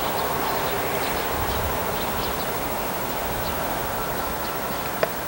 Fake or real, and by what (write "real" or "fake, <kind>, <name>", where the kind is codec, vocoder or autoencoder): real